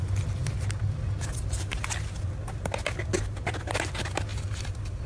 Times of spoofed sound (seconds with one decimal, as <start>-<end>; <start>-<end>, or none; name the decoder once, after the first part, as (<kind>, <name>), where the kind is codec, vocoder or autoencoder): 4.3-5.1 (vocoder, BigVGAN v2)